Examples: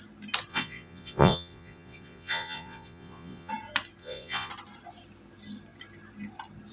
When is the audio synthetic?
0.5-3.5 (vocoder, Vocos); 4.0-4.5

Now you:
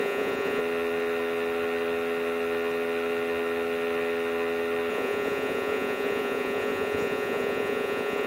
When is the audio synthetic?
0.0-0.6 (vocoder, Vocos); 4.9-8.3

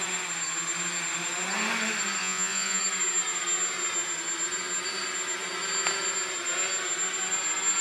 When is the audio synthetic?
2.2-2.8 (vocoder, Vocos)

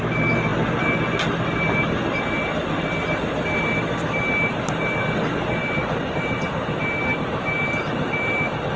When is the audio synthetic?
none